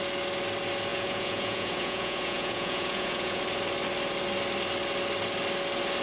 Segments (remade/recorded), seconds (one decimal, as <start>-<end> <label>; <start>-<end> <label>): 0.0-0.9 recorded; 0.9-3.4 remade; 3.4-6.0 recorded